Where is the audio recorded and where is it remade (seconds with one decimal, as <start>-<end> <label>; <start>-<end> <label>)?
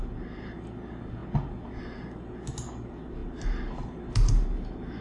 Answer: 0.0-5.0 recorded